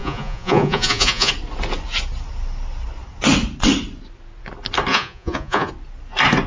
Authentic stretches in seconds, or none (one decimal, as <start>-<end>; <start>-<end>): 1.3-4.9; 5.7-6.5